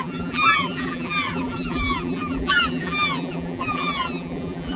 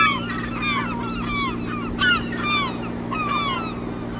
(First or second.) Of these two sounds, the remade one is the first